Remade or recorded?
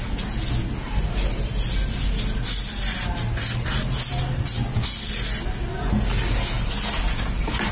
recorded